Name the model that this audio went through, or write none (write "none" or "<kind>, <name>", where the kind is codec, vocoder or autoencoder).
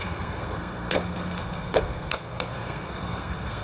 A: codec, SNAC